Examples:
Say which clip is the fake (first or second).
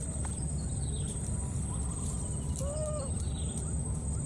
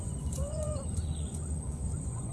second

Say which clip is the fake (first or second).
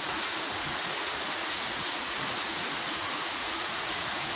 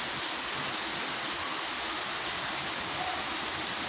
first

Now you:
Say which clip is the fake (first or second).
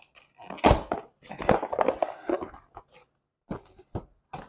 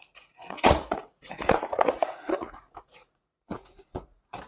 second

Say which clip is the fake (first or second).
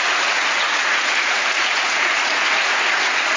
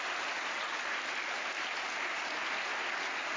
first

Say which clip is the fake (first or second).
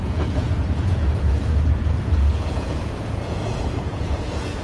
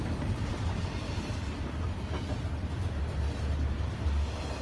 first